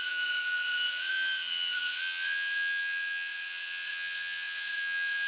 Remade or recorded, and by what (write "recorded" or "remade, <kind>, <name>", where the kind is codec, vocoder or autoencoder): remade, vocoder, WaveNeXt